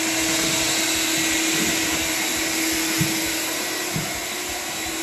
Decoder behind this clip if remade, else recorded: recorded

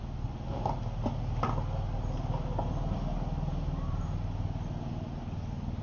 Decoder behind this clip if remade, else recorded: recorded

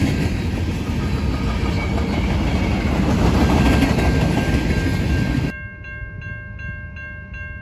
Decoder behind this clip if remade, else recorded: recorded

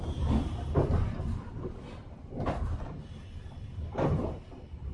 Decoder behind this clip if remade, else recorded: recorded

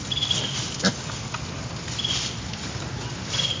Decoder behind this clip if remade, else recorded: recorded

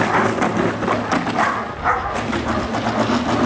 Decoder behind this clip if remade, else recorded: recorded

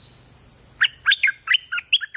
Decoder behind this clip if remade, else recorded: recorded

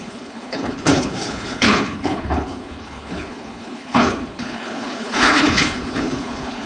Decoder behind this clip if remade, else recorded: remade, codec, HILCodec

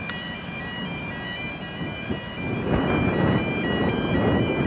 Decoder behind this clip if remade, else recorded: recorded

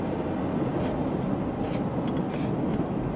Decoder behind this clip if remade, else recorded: recorded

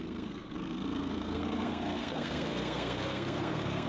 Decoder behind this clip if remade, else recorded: remade, codec, SNAC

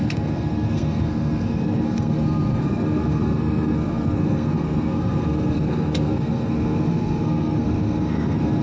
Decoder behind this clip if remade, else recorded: remade, codec, SNAC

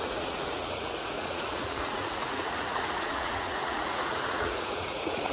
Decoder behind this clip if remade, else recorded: remade, vocoder, Vocos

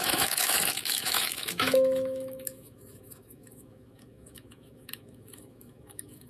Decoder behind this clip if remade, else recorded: remade, autoencoder, DAC-VAE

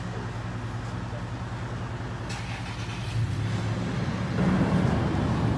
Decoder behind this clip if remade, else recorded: recorded